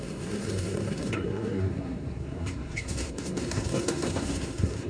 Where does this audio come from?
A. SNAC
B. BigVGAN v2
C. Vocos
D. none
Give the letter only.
A